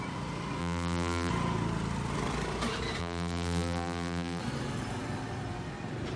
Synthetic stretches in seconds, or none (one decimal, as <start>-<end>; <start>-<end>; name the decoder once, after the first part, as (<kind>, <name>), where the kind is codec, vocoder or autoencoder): 0.6-1.3 (vocoder, BigVGAN v2); 3.0-4.4